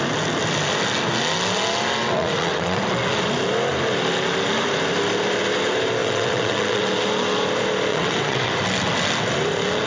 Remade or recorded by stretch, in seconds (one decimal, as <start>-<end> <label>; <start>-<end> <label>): 0.0-2.0 recorded; 2.0-2.8 remade; 2.8-6.0 recorded; 6.0-6.8 remade; 6.8-7.9 recorded; 7.9-8.5 remade; 8.5-9.9 recorded